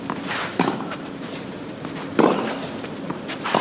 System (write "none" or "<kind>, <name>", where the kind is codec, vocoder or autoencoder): vocoder, BigVGAN v2